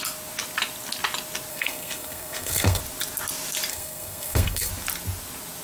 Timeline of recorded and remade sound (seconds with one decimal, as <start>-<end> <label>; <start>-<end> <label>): 0.0-1.5 recorded; 1.5-2.8 remade; 2.8-3.7 recorded; 3.7-4.7 remade; 4.7-5.6 recorded